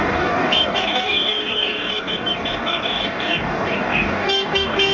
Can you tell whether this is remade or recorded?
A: remade